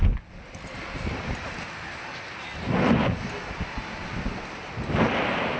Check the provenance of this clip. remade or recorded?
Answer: recorded